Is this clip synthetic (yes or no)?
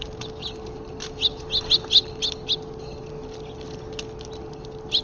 no